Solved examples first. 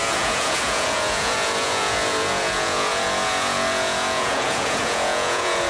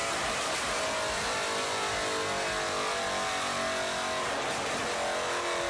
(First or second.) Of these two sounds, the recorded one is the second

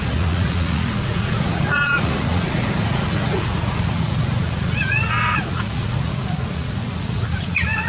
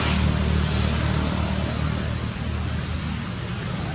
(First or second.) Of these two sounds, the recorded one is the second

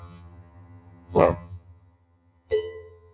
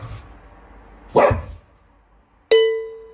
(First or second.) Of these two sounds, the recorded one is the second